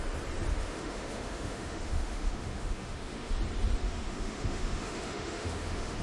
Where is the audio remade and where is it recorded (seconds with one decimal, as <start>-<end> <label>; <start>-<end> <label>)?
0.0-0.5 recorded; 0.5-3.3 remade; 3.3-3.8 recorded; 3.8-6.0 remade

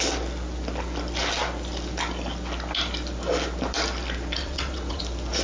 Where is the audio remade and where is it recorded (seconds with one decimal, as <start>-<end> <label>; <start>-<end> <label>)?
0.0-4.4 recorded; 4.4-5.0 remade; 5.0-5.4 recorded

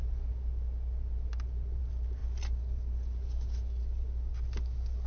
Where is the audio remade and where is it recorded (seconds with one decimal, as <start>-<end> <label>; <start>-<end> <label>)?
0.0-5.1 recorded

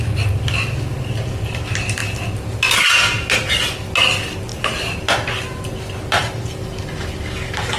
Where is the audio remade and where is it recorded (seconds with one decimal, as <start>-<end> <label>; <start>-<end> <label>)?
0.0-7.8 recorded

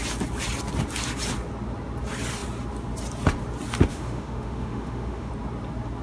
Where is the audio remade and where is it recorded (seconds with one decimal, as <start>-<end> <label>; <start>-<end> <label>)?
0.0-3.9 recorded; 3.9-5.3 remade; 5.3-6.0 recorded

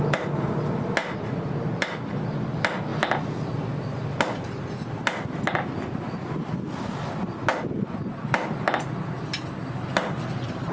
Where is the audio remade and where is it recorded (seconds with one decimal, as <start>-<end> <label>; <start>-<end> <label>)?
0.0-1.0 recorded; 1.0-2.1 remade; 2.1-7.5 recorded; 7.5-8.9 remade; 8.9-10.7 recorded

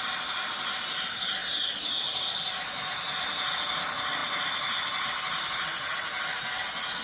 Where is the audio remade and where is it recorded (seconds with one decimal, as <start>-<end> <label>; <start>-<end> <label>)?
0.0-7.0 recorded